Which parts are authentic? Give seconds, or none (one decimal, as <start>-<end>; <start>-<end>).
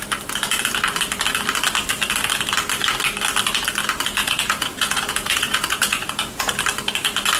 0.0-4.2; 6.5-7.4